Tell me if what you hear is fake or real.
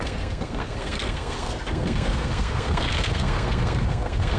fake